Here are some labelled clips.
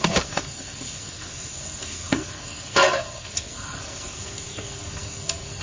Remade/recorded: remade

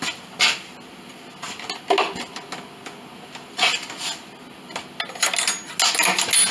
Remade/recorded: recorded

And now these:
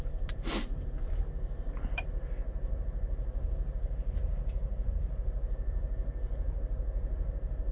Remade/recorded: recorded